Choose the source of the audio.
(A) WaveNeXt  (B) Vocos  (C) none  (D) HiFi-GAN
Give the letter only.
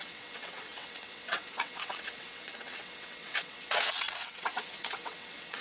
A